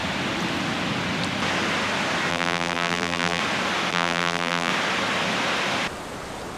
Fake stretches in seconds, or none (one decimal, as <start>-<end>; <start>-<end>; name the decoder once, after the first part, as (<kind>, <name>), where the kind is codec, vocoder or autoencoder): 2.3-3.4 (vocoder, BigVGAN v2); 3.9-4.7